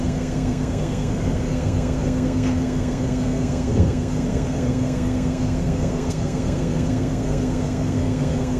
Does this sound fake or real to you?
fake